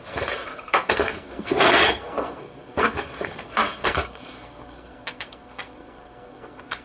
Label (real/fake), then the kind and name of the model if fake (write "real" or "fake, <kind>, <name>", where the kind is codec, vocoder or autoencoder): fake, codec, SNAC